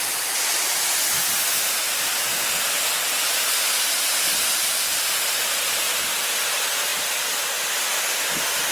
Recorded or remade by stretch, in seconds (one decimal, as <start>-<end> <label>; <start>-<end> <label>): 0.0-8.7 recorded